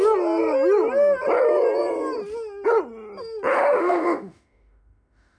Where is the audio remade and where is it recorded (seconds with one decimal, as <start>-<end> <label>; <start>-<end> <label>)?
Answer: 0.0-3.5 recorded; 3.5-5.4 remade